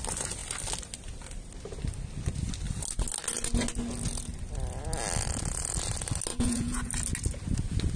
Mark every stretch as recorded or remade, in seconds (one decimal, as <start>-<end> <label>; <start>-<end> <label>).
0.0-6.3 recorded; 6.3-6.9 remade; 6.9-8.0 recorded